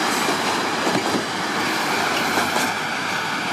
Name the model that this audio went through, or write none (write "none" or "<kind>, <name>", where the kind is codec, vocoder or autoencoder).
none